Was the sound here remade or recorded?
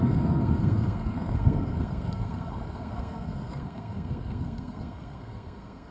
remade